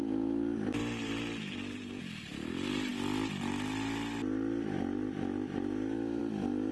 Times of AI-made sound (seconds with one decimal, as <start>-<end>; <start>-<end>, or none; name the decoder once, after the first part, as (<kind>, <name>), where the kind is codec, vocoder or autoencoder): 0.8-2.0 (vocoder, BigVGAN v2)